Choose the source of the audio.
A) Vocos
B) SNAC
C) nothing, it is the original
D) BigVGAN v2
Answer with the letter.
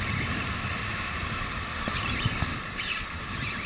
D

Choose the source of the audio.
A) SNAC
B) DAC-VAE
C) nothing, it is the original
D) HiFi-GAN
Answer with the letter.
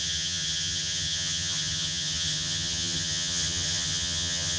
D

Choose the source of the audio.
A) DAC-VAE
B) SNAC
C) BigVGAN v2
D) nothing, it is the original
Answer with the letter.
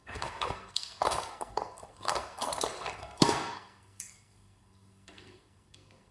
B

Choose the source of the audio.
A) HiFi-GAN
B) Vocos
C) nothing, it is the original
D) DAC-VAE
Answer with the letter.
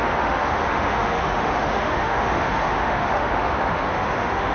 D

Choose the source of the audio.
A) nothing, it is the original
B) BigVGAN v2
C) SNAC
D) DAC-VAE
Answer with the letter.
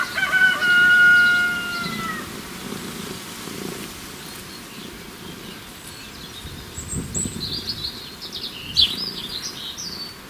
A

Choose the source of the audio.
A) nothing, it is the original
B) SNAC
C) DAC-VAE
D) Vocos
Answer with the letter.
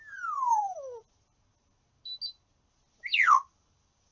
A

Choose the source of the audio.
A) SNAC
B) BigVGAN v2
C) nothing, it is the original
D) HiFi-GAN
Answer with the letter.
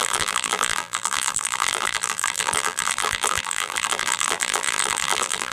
B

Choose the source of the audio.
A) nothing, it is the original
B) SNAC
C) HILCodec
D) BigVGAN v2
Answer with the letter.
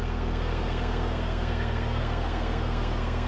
B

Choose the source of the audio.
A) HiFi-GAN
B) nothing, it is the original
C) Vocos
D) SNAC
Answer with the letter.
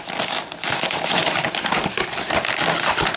B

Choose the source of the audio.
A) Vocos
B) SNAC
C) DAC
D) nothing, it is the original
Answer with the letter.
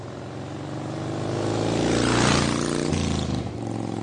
D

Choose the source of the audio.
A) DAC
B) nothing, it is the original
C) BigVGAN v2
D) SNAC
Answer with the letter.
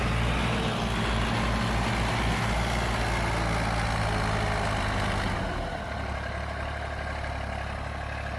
B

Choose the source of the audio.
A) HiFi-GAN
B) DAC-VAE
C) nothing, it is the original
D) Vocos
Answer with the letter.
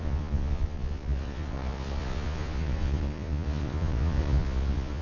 D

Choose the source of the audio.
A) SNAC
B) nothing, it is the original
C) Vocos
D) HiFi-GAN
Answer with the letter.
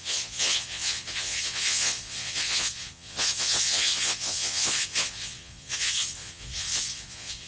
C